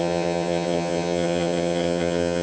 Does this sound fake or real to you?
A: fake